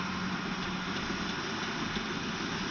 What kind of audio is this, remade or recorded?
recorded